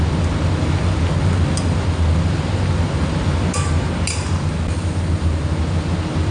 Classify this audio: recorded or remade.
recorded